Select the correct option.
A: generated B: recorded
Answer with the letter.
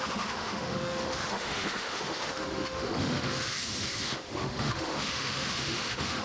A